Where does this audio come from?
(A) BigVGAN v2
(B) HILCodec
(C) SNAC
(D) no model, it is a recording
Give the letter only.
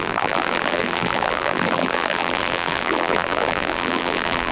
A